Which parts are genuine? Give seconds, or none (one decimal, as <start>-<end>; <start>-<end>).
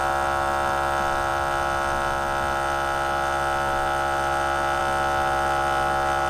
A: 0.0-6.3